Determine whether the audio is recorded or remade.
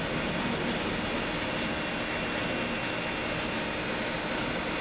recorded